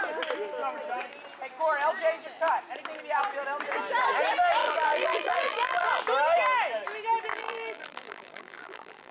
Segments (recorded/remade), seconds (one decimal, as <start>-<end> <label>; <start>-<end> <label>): 0.0-4.6 recorded; 4.6-6.0 remade; 6.0-7.3 recorded; 7.3-9.1 remade